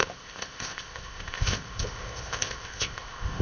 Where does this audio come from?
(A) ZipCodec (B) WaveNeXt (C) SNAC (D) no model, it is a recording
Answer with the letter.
A